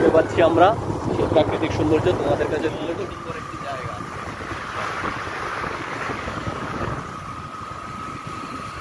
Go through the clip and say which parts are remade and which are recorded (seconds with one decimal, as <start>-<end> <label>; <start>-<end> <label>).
0.0-5.5 recorded; 5.5-6.9 remade; 6.9-8.8 recorded